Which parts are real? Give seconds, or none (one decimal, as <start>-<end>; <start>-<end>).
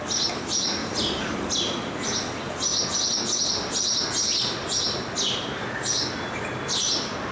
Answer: 0.0-0.8; 1.6-7.3